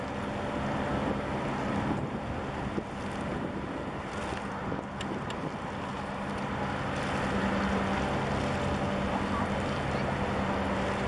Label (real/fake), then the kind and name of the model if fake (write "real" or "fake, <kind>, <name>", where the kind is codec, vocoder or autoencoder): real